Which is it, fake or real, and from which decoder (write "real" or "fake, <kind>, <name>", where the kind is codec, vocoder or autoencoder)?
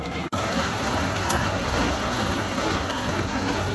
fake, codec, SNAC